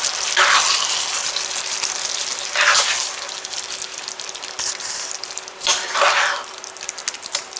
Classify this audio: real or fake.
real